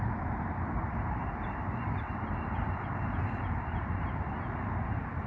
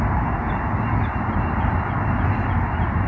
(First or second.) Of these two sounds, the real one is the second